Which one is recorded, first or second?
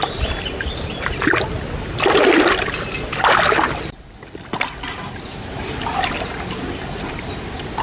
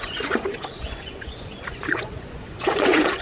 first